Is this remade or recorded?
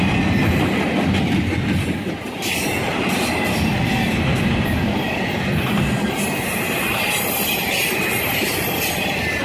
recorded